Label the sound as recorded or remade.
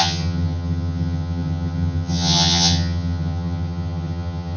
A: remade